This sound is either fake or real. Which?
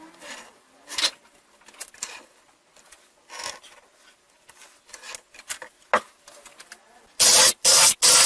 real